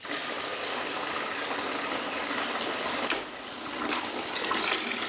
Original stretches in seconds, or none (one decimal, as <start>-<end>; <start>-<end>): 0.0-5.1